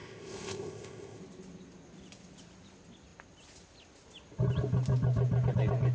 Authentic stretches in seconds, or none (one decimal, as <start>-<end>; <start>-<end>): 1.2-5.9